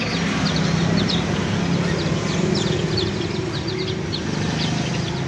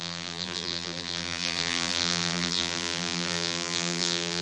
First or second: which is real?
first